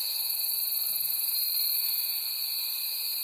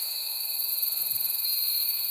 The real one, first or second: first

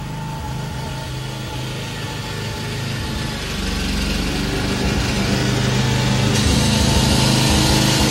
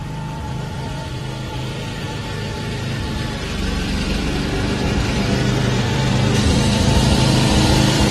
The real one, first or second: first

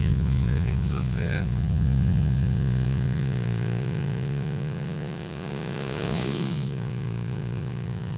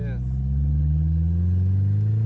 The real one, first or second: second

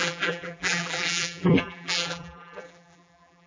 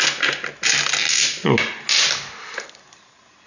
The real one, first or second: second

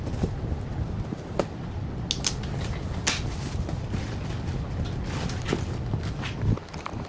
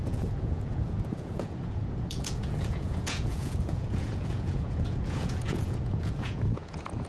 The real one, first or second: first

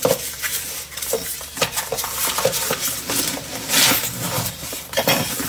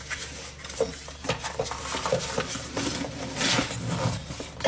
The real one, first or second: second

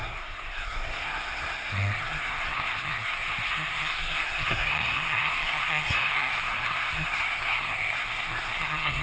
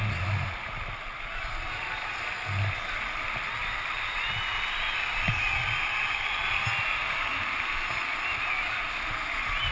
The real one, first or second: second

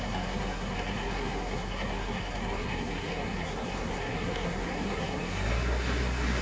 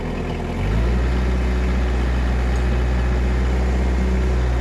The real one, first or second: second